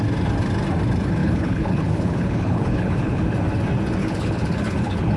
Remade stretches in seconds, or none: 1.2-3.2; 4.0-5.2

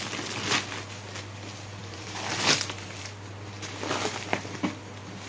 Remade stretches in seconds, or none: 1.8-3.0

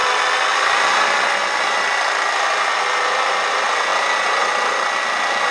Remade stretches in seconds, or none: none

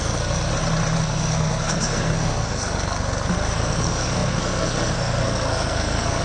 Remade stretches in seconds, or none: 0.0-0.5; 1.0-6.2

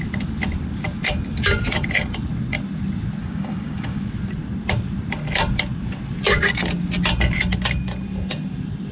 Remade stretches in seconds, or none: 3.2-4.0

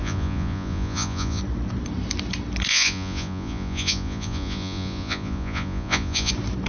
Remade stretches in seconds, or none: 0.0-1.4; 2.7-6.3

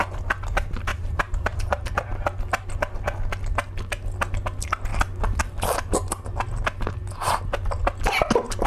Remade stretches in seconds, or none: 0.9-1.6